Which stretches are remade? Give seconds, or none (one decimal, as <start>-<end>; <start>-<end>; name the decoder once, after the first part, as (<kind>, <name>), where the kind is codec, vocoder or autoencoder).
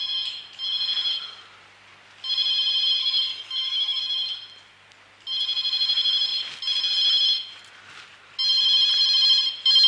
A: 3.0-4.0 (codec, DAC)